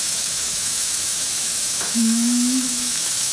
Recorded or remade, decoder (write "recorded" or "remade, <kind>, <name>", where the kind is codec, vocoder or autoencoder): remade, autoencoder, DAC-VAE